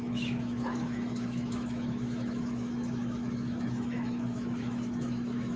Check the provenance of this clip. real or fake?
fake